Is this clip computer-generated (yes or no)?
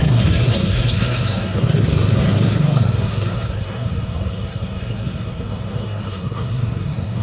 yes